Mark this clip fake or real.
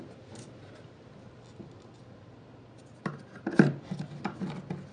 real